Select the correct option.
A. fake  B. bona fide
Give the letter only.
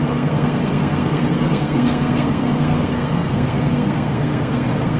A